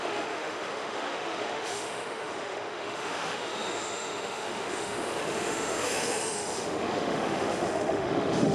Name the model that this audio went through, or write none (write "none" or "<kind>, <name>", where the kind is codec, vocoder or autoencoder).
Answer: autoencoder, DAC-VAE